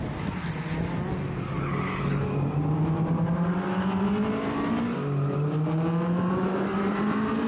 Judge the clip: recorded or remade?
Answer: recorded